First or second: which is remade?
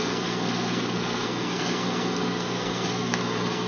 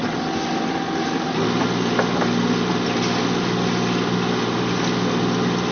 first